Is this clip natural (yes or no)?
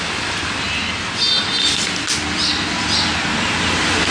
yes